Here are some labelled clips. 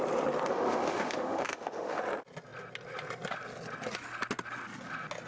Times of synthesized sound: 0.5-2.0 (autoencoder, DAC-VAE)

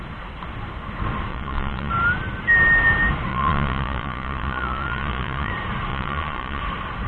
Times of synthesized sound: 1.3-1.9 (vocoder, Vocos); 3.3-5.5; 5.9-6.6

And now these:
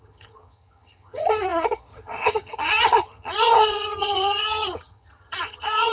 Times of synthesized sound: 0.0-5.9 (vocoder, HiFi-GAN)

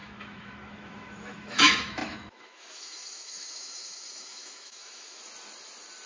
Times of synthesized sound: 0.0-5.2 (autoencoder, DAC-VAE)

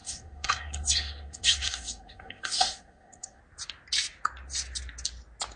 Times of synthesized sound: 0.0-3.4 (codec, SNAC)

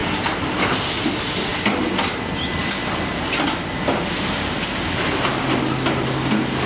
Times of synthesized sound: 0.0-0.6 (vocoder, BigVGAN v2)

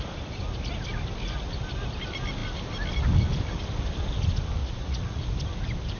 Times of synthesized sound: 4.6-5.2 (vocoder, Vocos)